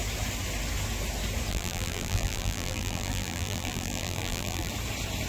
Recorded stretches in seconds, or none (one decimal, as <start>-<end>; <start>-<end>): 0.0-1.5; 4.7-5.3